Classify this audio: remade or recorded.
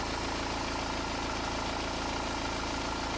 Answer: recorded